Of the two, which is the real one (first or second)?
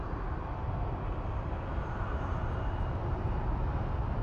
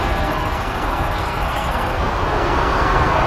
first